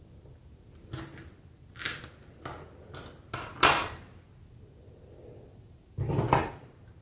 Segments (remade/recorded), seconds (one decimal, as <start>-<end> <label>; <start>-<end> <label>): 0.0-6.4 recorded; 6.4-7.0 remade